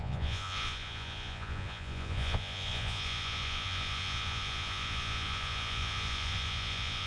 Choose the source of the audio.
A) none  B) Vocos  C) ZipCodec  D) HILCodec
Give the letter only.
B